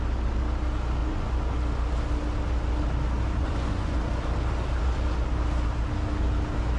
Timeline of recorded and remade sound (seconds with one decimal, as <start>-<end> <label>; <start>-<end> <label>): 0.0-1.0 recorded; 1.0-1.6 remade; 1.6-3.4 recorded; 3.4-4.0 remade; 4.0-6.8 recorded